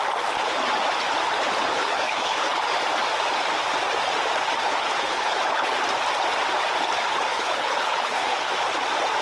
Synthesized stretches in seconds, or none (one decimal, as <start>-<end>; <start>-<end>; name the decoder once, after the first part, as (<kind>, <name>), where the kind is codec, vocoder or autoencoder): 1.6-2.6 (codec, HILCodec); 4.6-5.7; 7.3-8.5